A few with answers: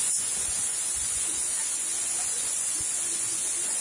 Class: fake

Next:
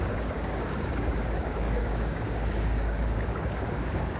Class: fake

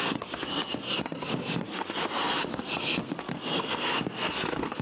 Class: fake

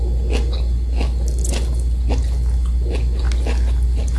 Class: real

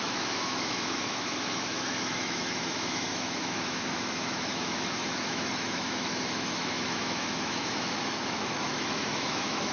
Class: fake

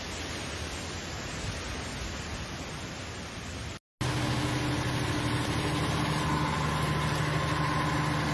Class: real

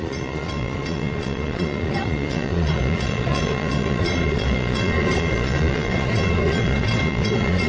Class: fake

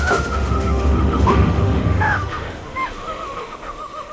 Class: fake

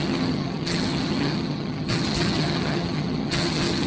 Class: fake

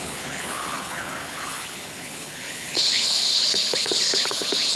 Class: fake